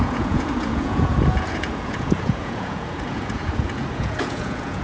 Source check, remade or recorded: remade